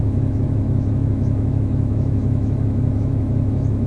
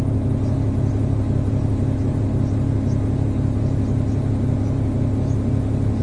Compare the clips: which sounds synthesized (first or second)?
first